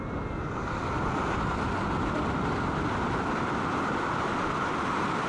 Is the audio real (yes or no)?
yes